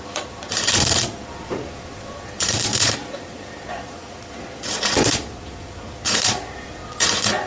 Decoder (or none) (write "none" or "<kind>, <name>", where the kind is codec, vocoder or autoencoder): vocoder, Vocos